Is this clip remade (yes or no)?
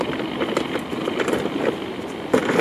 no